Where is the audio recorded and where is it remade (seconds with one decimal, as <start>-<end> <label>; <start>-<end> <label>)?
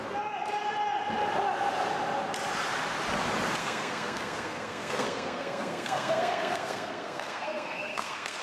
0.0-3.6 recorded; 3.6-8.4 remade